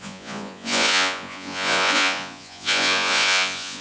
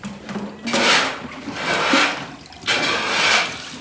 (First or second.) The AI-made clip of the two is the first